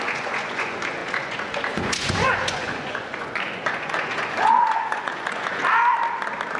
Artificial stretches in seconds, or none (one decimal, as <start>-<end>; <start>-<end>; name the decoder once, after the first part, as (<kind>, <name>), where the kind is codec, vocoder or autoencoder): 0.0-5.6 (vocoder, Vocos)